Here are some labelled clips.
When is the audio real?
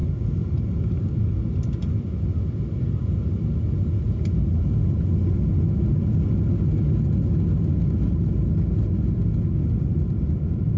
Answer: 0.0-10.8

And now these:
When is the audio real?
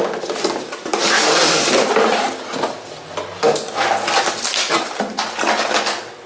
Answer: 0.0-6.3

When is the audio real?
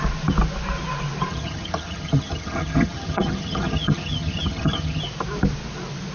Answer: 0.0-1.3; 5.0-6.1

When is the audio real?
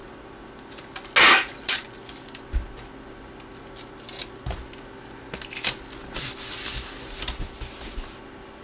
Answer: 0.0-8.6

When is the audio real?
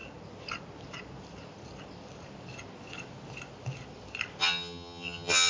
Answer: 0.0-4.4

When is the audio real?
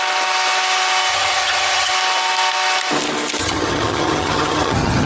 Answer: 0.0-1.1; 1.9-3.4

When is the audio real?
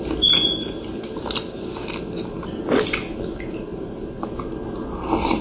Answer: 0.0-5.4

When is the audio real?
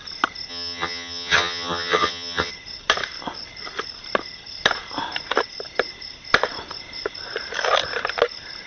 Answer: 0.0-0.5; 2.5-8.7